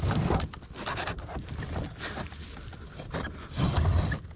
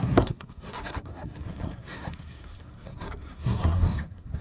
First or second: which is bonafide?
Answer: first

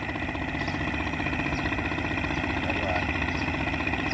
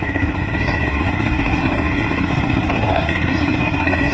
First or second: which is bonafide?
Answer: first